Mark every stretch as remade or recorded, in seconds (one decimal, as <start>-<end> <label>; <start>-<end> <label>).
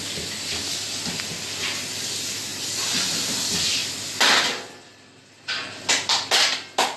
0.0-7.0 recorded